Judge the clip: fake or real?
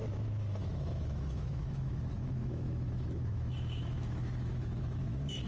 fake